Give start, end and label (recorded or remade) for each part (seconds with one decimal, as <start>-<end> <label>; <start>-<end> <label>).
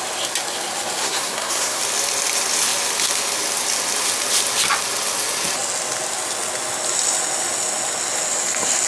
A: 0.0-1.0 recorded; 1.0-1.8 remade; 1.8-8.9 recorded